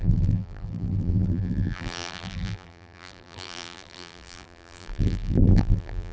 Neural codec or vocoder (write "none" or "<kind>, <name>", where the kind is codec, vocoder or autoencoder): vocoder, BigVGAN v2